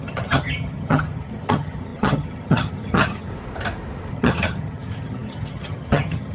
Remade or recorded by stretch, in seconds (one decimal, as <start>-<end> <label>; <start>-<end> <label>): 0.0-3.3 remade; 3.3-4.1 recorded; 4.1-6.3 remade